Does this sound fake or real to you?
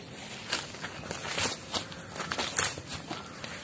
real